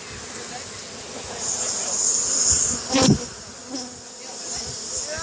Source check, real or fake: real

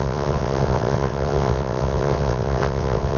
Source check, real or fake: fake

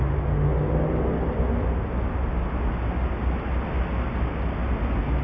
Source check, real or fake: real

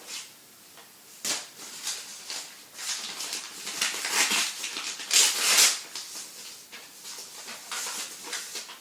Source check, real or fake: real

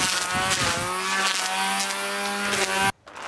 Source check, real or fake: real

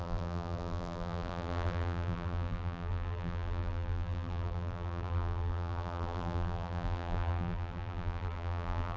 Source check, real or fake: fake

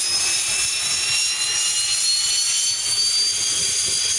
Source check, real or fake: real